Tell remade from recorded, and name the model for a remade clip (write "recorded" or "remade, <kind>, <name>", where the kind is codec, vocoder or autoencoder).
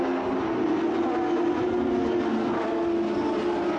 recorded